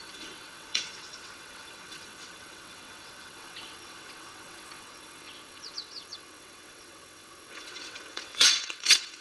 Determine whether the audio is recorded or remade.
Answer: remade